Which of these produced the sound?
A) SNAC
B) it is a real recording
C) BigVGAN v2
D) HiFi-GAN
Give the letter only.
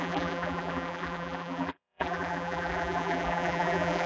C